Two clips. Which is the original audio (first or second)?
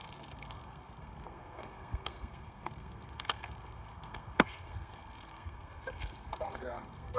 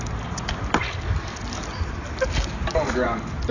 second